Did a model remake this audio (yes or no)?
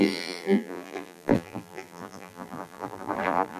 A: yes